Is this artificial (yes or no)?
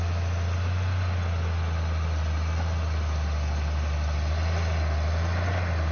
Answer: no